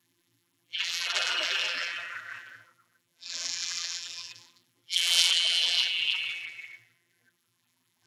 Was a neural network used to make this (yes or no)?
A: yes